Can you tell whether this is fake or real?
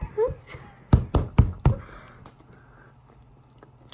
real